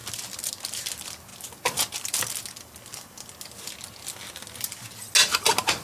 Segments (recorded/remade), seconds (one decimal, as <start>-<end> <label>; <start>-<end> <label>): 0.0-5.8 recorded